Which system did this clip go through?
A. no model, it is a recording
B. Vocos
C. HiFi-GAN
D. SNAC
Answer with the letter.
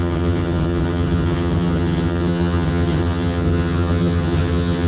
C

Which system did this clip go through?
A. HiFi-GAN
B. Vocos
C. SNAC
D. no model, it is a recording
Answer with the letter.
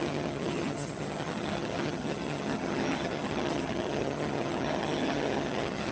A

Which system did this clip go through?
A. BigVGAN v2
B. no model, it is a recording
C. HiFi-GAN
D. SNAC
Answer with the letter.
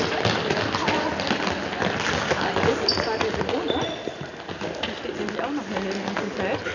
B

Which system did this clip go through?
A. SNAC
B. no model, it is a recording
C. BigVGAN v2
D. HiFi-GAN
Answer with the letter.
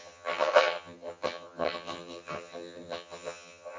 D